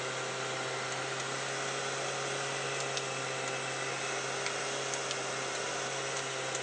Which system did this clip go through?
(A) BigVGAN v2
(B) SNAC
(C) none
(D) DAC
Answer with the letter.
C